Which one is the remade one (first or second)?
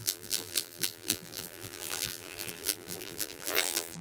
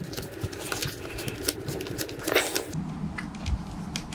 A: first